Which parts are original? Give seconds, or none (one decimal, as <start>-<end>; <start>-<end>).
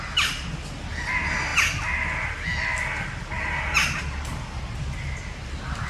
0.0-5.9